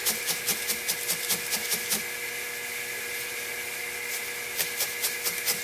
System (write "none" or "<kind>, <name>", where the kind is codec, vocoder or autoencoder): none